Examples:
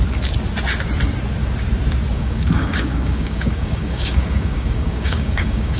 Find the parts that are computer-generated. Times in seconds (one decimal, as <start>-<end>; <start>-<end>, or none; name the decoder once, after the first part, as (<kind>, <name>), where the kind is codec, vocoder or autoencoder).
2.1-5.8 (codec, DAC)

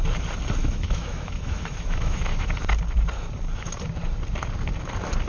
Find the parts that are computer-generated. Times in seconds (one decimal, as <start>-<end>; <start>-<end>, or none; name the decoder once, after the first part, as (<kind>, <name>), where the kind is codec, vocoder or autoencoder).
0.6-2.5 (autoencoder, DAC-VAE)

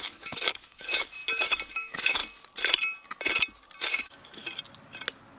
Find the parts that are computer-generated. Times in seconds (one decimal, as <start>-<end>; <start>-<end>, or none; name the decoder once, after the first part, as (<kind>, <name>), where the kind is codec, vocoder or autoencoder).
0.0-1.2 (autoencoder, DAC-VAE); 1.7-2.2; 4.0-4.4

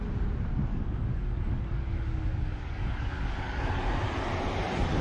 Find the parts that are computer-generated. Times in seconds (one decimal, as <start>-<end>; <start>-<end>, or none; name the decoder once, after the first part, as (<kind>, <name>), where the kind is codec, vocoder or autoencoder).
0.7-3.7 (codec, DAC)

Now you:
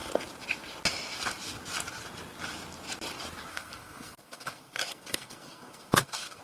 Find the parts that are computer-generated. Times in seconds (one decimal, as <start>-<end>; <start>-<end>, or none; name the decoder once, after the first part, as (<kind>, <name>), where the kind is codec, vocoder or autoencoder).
3.5-6.4 (codec, SNAC)

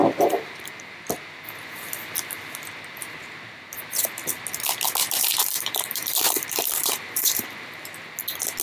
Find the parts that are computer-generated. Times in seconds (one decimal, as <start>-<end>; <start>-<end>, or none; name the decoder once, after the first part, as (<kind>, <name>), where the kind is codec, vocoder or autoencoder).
0.0-0.9 (vocoder, BigVGAN v2); 5.0-7.9

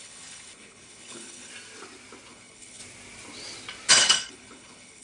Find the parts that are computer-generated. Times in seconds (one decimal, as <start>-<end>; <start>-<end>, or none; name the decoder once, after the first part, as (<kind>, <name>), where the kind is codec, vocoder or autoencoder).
0.0-1.5 (codec, HILCodec); 2.3-2.8; 3.9-5.0

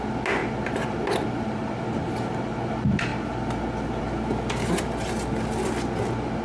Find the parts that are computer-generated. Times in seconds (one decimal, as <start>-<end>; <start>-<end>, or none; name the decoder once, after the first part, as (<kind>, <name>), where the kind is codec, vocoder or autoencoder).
none